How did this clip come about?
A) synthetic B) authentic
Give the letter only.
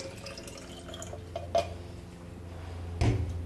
B